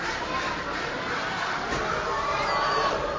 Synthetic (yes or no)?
no